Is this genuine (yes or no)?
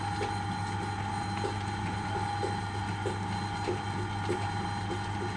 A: yes